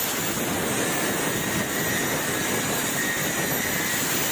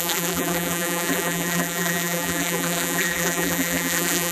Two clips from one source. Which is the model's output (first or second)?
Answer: second